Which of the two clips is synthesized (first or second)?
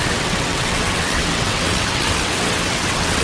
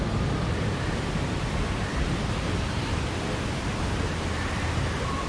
first